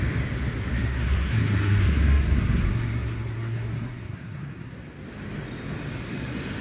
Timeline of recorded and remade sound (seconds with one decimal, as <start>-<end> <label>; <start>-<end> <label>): 0.0-0.7 recorded; 0.7-4.7 remade; 4.7-6.6 recorded